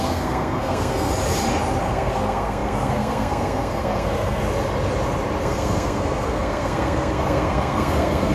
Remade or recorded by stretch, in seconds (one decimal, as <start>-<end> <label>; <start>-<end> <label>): 0.0-1.1 remade; 1.1-1.8 recorded; 1.8-4.4 remade; 4.4-5.4 recorded; 5.4-8.3 remade